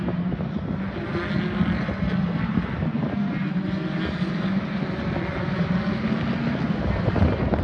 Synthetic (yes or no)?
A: no